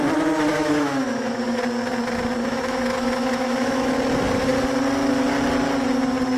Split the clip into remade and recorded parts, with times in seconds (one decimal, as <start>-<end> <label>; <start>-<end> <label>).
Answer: 0.0-0.5 recorded; 0.5-1.6 remade; 1.6-2.4 recorded; 2.4-3.9 remade; 3.9-6.4 recorded